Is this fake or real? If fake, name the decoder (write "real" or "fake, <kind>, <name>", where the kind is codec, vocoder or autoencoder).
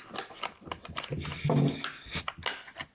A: real